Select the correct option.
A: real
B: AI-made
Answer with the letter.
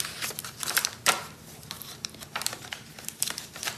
B